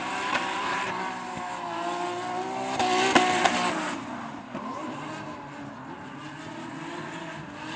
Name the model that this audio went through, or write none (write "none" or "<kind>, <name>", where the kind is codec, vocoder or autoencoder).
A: none